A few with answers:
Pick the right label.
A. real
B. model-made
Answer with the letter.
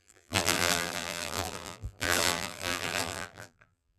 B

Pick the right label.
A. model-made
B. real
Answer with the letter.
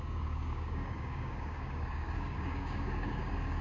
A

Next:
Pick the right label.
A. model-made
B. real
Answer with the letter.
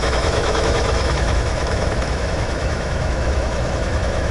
A